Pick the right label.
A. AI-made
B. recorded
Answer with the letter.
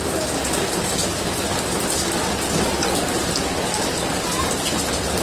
B